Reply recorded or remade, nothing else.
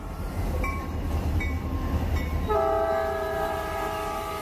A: remade